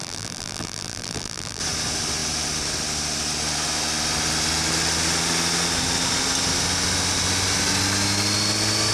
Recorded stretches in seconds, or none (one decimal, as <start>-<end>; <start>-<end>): 1.6-8.9